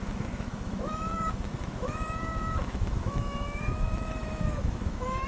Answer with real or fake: fake